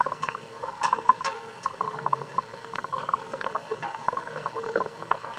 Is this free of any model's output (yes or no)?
no